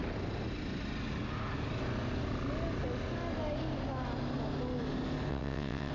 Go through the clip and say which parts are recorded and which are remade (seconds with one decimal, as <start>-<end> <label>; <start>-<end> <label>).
0.0-5.3 recorded; 5.3-5.9 remade